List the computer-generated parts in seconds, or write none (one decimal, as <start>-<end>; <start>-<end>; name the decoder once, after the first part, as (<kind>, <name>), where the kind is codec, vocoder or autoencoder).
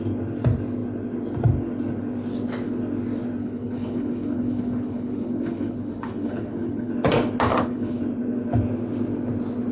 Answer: 3.4-6.9 (codec, HILCodec); 7.5-8.0